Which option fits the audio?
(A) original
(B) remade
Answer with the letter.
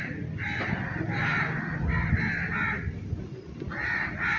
A